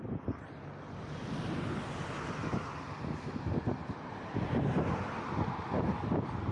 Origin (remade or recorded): recorded